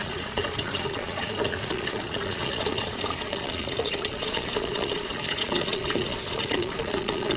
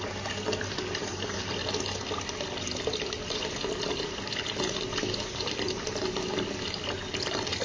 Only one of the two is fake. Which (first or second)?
first